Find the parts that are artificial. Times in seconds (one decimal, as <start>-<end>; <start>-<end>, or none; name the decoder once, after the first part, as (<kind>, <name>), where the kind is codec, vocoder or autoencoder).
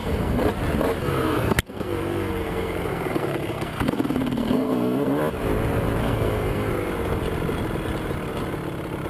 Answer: 0.0-0.5 (codec, SNAC); 1.0-5.2; 6.0-6.7